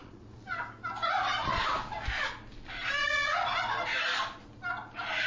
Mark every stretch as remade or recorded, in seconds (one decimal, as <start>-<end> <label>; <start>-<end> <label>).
0.0-0.6 remade; 0.6-3.0 recorded; 3.0-3.6 remade; 3.6-5.3 recorded